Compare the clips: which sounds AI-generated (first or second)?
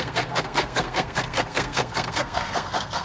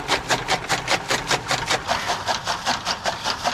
first